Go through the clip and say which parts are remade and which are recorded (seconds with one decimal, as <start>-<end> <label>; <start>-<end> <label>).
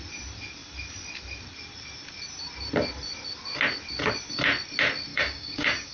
0.0-5.1 recorded; 5.1-5.9 remade